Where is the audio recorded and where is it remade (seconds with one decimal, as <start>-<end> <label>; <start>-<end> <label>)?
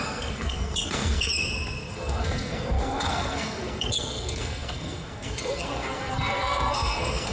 0.0-1.3 remade; 1.3-1.9 recorded; 1.9-7.3 remade